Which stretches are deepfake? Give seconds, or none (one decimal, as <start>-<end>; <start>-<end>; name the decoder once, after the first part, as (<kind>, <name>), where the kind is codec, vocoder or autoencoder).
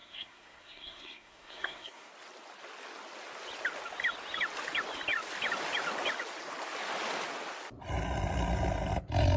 0.0-2.1 (codec, SNAC)